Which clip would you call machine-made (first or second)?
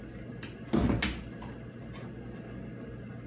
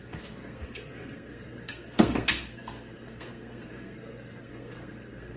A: second